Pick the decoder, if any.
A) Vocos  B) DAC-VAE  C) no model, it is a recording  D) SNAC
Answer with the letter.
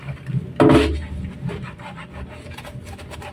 C